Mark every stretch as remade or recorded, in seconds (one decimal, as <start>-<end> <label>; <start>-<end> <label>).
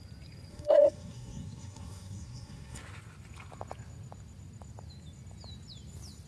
0.0-0.5 recorded; 0.5-2.8 remade; 2.8-6.3 recorded